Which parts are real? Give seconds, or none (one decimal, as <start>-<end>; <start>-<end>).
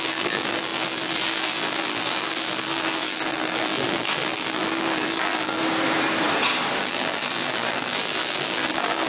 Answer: 5.6-6.8